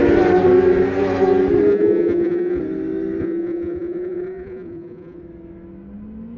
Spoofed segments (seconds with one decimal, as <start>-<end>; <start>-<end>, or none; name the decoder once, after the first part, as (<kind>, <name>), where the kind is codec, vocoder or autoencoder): 1.7-2.6 (vocoder, Vocos); 3.2-5.2